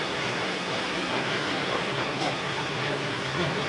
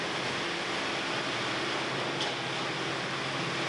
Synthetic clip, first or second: first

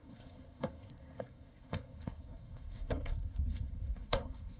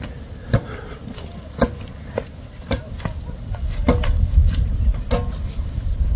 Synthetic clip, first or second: first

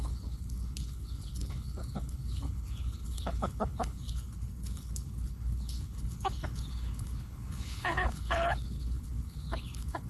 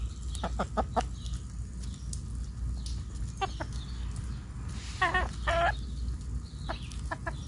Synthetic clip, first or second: first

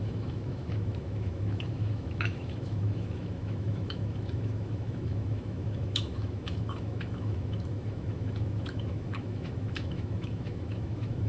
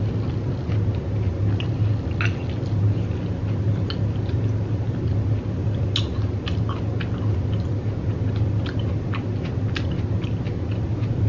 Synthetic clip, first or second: first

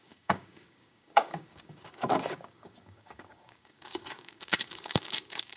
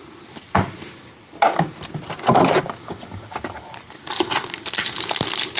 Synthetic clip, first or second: first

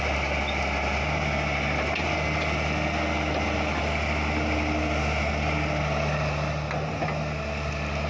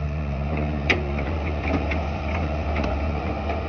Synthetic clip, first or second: second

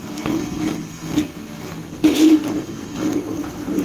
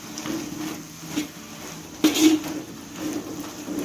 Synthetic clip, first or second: first